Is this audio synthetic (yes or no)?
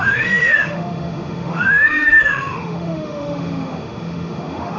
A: yes